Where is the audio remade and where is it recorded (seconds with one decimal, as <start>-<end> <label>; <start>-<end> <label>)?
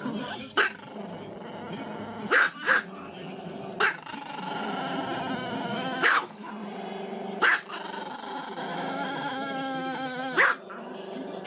0.0-5.7 recorded; 5.7-6.5 remade; 6.5-8.7 recorded; 8.7-10.2 remade; 10.2-11.5 recorded